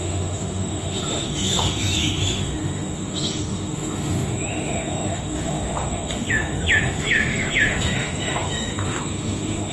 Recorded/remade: remade